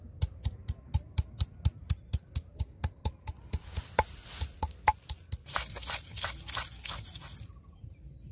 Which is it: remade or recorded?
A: recorded